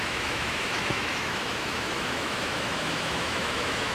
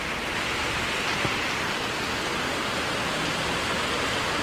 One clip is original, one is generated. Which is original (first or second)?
second